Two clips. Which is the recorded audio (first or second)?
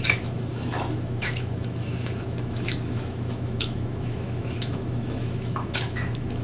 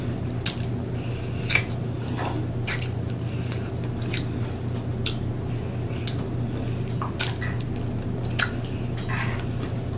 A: second